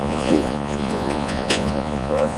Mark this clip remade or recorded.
remade